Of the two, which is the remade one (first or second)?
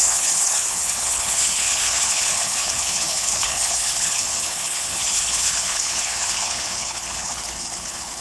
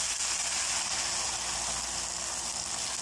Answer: first